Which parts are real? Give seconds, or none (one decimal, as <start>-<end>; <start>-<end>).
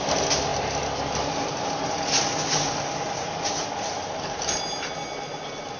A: 0.0-5.8